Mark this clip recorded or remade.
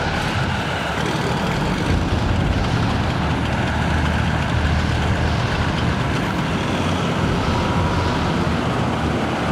recorded